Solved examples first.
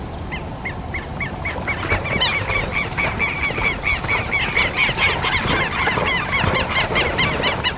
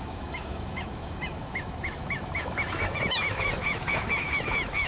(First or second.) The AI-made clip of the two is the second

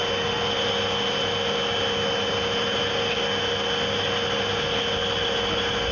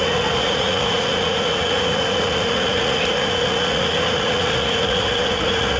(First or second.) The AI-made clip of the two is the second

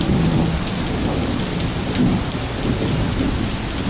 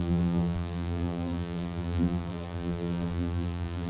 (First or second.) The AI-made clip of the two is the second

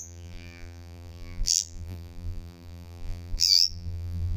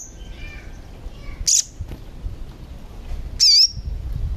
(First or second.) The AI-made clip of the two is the first